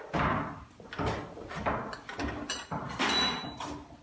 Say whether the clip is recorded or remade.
recorded